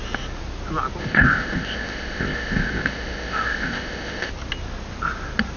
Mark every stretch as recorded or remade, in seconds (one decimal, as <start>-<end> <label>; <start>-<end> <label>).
0.0-1.0 recorded; 1.0-4.3 remade; 4.3-5.6 recorded